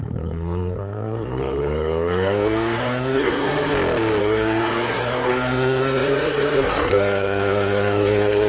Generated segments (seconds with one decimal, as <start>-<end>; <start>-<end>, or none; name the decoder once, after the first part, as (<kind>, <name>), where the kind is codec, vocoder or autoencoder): 0.0-3.7 (codec, SNAC); 4.2-8.5